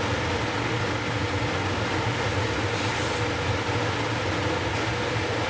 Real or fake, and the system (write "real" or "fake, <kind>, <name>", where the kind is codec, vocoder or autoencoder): real